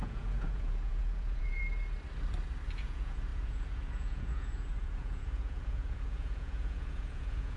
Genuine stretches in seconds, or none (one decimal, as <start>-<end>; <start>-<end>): 1.6-2.7